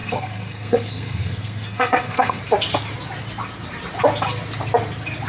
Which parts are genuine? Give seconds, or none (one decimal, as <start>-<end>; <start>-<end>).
2.4-5.3